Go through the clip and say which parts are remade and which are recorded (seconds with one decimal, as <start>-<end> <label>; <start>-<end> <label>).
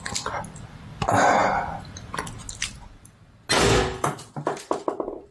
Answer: 0.0-5.3 recorded